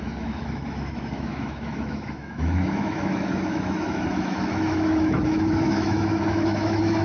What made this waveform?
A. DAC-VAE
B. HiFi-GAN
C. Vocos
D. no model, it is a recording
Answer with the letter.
A